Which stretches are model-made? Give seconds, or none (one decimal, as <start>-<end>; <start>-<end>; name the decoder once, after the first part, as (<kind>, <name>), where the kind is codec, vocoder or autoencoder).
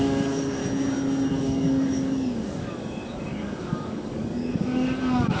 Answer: 0.0-0.6 (codec, DAC); 1.3-5.4